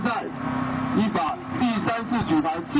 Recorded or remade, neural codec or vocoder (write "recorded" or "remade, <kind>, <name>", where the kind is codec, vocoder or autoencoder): recorded